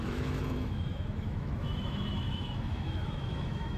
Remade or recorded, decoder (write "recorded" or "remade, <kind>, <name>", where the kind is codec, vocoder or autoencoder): remade, autoencoder, DAC-VAE